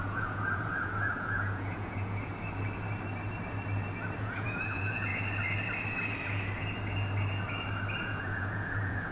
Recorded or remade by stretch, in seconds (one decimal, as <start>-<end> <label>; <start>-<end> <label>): 0.0-2.3 remade; 2.3-4.2 recorded; 4.2-5.1 remade; 5.1-8.0 recorded; 8.0-9.1 remade